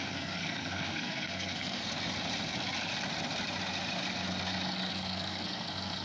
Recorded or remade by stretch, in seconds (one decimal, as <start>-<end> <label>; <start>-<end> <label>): 0.0-1.9 remade; 1.9-4.9 recorded; 4.9-6.0 remade